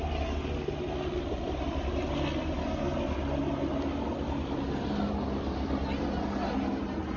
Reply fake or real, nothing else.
real